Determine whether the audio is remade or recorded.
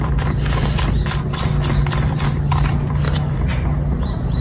remade